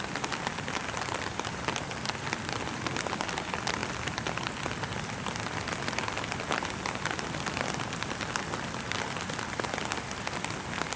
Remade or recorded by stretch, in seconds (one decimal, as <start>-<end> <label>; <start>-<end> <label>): 0.0-11.0 recorded

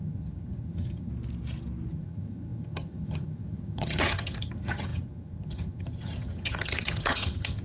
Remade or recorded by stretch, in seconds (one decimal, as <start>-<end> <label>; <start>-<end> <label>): 0.0-1.1 remade; 1.1-1.9 recorded; 1.9-7.6 remade

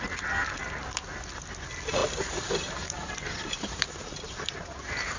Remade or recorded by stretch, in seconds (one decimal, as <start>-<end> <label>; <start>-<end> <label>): 0.0-2.0 recorded; 2.0-5.2 remade

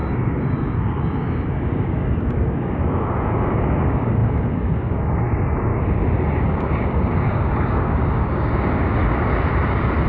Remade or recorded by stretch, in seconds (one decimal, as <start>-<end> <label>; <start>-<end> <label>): 0.0-5.7 remade; 5.7-6.4 recorded; 6.4-9.0 remade; 9.0-10.1 recorded

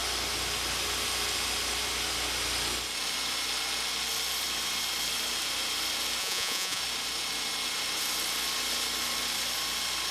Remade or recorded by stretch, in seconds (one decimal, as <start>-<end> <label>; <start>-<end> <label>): 0.0-6.2 recorded; 6.2-6.8 remade; 6.8-10.1 recorded

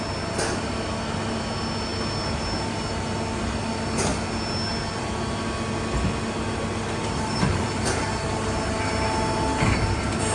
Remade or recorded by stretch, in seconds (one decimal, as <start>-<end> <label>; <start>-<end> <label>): 0.0-7.0 recorded; 7.0-7.8 remade; 7.8-10.3 recorded

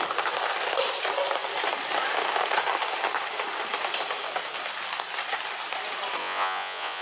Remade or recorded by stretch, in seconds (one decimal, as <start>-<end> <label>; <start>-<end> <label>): 0.0-6.2 recorded; 6.2-7.0 remade

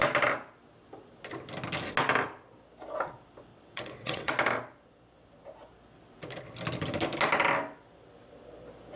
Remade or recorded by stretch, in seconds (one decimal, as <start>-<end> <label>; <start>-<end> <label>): 0.0-3.5 recorded; 3.5-4.3 remade; 4.3-9.0 recorded